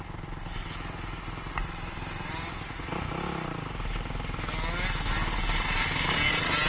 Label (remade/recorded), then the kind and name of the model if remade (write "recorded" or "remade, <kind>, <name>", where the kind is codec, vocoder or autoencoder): recorded